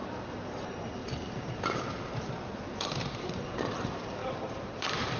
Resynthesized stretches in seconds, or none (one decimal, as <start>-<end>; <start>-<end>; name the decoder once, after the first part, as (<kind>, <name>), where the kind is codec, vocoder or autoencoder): 0.0-5.2 (vocoder, BigVGAN v2)